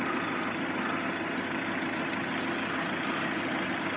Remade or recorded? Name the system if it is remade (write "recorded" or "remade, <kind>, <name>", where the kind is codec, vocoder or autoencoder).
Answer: recorded